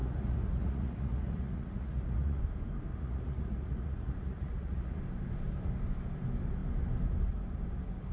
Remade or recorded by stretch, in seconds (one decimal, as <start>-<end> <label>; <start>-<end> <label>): 0.0-2.4 remade; 2.4-2.9 recorded; 2.9-5.0 remade; 5.0-8.1 recorded